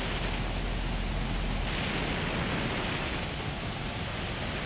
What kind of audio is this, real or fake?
real